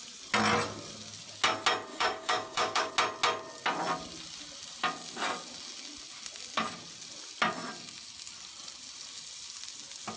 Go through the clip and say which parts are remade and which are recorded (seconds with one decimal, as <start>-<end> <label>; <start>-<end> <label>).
0.0-1.9 recorded; 1.9-2.9 remade; 2.9-10.2 recorded